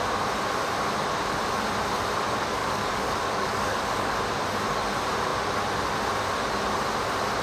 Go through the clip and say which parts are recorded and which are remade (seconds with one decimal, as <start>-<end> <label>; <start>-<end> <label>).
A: 0.0-2.6 recorded; 2.6-4.2 remade; 4.2-7.4 recorded